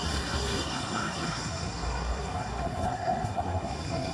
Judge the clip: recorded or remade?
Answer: remade